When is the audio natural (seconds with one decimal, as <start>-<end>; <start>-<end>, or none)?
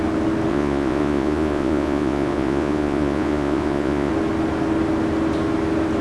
0.0-0.5; 4.1-6.0